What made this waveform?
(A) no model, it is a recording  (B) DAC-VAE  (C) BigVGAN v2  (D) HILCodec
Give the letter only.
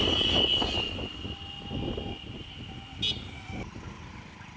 A